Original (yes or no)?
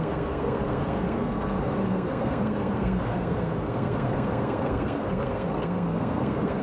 no